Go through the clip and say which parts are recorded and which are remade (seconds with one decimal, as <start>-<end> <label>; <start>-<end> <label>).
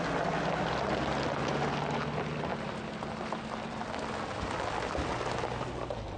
0.0-6.2 recorded